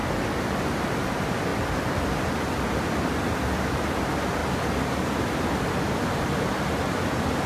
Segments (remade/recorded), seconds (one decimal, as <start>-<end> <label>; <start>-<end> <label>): 0.0-0.5 recorded; 0.5-7.5 remade